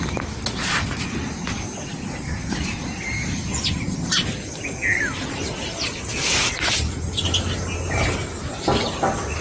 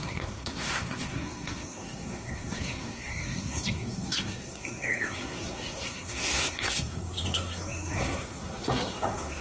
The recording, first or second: first